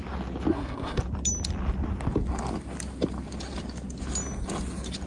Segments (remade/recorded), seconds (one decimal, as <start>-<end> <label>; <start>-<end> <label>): 0.0-0.5 recorded; 0.5-1.0 remade; 1.0-5.1 recorded